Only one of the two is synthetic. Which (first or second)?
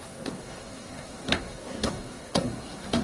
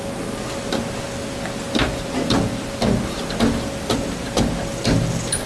first